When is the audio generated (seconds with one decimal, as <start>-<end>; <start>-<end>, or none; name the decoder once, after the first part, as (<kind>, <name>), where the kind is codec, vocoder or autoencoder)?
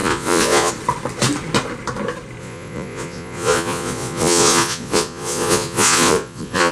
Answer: 0.0-0.7 (vocoder, Vocos); 2.4-6.7